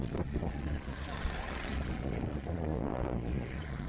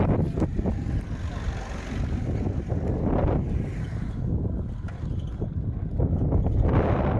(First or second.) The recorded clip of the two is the second